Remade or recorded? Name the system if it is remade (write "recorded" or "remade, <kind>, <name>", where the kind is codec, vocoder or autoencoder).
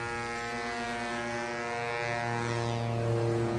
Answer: recorded